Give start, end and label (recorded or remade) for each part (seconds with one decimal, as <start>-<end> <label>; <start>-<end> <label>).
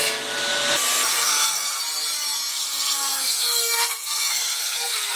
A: 0.0-1.1 recorded; 1.1-1.8 remade; 1.8-2.5 recorded; 2.5-5.2 remade